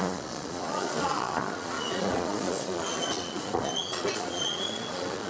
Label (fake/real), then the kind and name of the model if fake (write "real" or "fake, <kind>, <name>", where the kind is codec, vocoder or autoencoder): fake, vocoder, Vocos